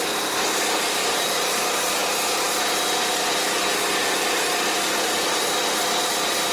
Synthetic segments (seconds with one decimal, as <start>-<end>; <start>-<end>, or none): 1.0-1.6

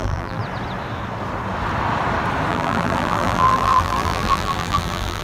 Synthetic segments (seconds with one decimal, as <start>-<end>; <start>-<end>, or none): 0.0-0.4; 2.5-5.2

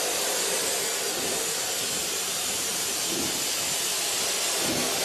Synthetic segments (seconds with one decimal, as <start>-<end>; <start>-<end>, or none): 2.0-3.3

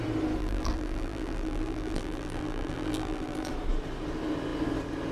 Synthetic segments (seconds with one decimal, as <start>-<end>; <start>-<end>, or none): 0.4-3.5